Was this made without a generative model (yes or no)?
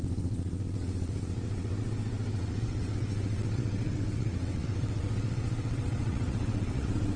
no